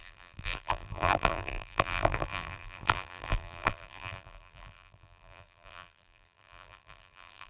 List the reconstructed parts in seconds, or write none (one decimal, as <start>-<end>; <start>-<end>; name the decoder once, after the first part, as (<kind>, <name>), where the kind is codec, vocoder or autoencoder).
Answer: 0.0-7.5 (vocoder, BigVGAN v2)

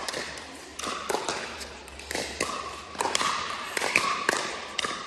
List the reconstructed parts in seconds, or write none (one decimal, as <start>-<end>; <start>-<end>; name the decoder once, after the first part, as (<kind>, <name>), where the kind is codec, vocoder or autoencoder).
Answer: 0.0-5.1 (vocoder, BigVGAN v2)